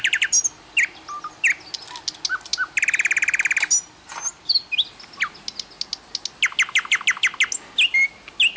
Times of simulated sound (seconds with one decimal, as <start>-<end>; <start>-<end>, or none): none